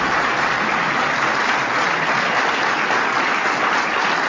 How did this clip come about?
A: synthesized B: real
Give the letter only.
B